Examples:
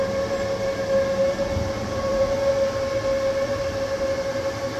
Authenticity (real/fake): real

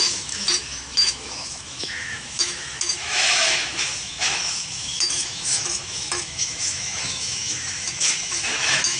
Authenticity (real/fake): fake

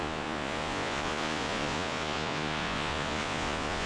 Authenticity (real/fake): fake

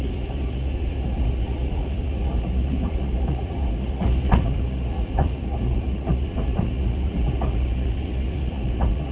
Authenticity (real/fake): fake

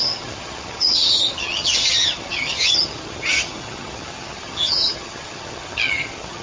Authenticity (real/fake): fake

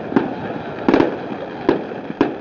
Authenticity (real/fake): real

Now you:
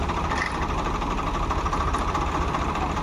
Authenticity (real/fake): real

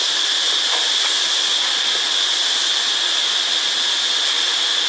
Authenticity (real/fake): real